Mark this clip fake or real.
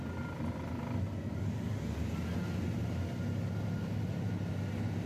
real